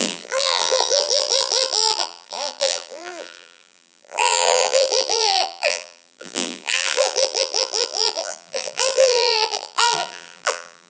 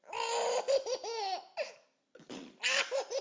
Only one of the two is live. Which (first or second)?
second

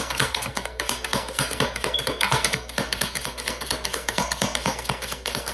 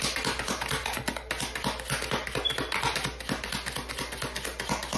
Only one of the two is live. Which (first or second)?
second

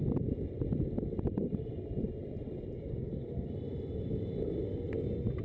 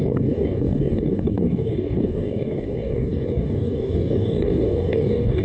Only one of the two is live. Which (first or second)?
first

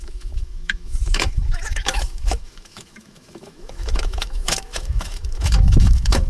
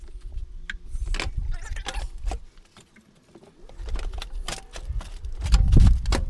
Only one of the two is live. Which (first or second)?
second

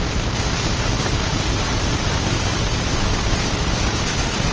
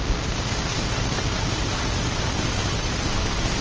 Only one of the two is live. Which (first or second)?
second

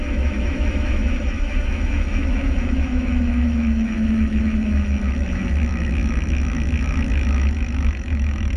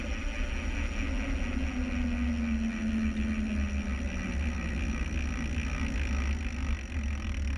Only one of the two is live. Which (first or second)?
second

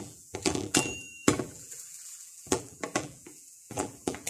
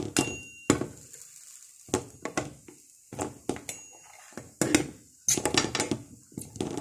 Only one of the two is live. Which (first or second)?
second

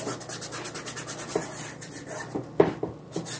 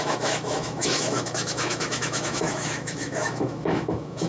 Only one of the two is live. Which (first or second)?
first